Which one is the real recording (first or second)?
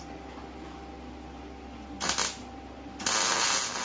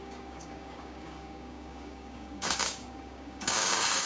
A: first